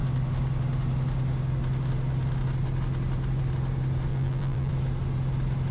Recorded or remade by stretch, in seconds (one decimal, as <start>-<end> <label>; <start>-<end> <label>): 0.0-4.1 recorded; 4.1-4.7 remade; 4.7-5.7 recorded